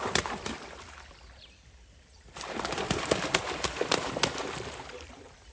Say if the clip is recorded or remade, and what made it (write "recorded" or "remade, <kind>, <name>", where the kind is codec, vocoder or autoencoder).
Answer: remade, vocoder, BigVGAN v2